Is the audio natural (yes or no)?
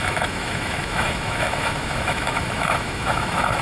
no